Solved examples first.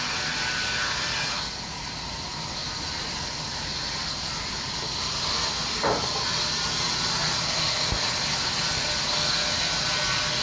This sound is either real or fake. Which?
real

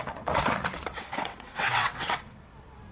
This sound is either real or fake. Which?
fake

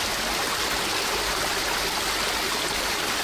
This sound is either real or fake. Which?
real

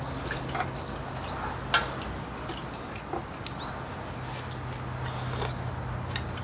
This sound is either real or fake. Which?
real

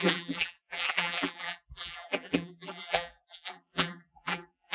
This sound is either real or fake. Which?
fake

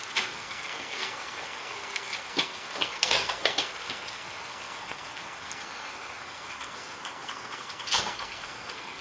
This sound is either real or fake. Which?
fake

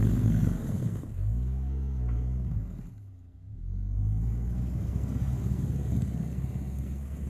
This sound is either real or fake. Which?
fake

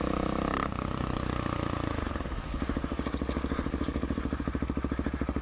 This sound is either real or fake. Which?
real